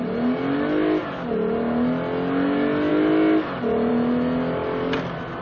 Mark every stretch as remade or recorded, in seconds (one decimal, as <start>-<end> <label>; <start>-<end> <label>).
0.0-5.4 recorded